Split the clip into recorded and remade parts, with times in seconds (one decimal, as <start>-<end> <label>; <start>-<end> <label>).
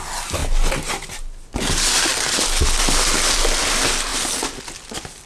0.0-5.3 recorded